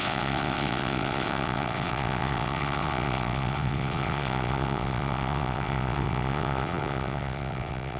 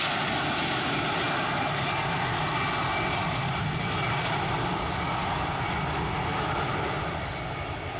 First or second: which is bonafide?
second